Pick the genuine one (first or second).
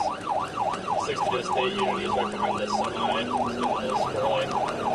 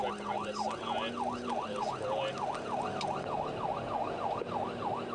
second